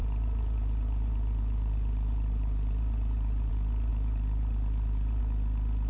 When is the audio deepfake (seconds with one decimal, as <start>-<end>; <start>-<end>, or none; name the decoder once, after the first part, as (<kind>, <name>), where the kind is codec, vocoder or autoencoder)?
0.0-3.5 (vocoder, BigVGAN v2); 3.9-5.2